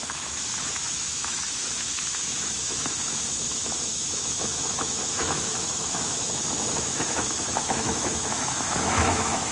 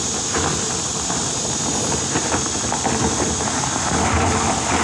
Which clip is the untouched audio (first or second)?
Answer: second